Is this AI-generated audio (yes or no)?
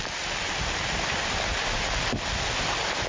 no